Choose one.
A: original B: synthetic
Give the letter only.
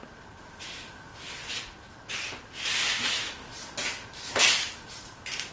A